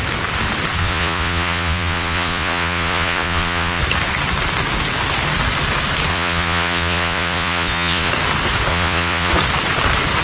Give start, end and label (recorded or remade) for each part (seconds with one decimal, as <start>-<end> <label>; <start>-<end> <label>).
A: 0.0-0.8 recorded; 0.8-3.8 remade; 3.8-6.1 recorded; 6.1-8.1 remade; 8.1-8.7 recorded; 8.7-9.3 remade; 9.3-10.2 recorded